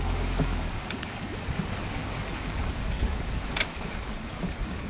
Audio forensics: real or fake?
fake